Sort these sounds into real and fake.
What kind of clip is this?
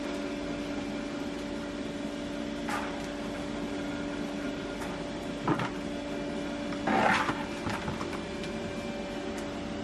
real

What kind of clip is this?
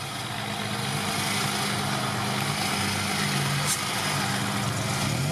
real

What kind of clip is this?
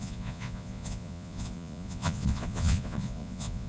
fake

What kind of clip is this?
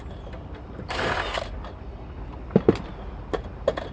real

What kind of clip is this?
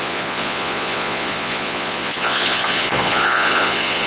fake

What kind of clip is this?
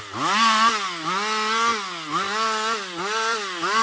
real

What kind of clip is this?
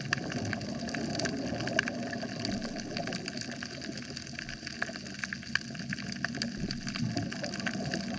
real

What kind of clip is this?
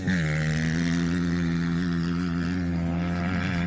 real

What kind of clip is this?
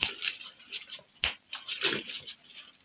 real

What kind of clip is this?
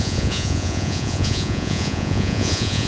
fake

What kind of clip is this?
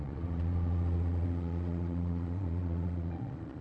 fake